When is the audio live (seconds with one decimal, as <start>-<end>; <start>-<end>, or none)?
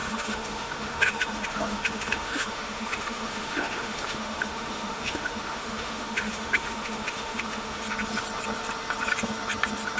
7.8-10.0